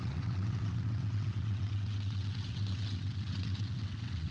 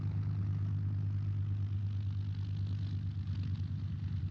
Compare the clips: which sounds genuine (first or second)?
second